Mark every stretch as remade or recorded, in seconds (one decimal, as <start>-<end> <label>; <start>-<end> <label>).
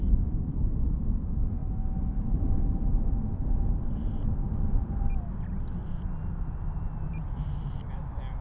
0.0-8.4 recorded